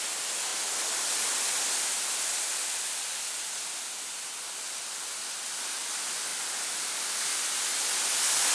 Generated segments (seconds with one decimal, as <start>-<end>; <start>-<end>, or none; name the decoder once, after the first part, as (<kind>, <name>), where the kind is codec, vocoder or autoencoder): none